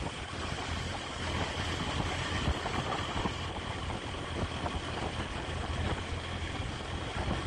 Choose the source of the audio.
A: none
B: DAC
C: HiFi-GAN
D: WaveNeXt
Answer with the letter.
A